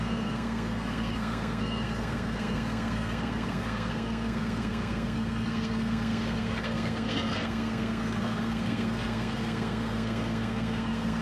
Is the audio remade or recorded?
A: remade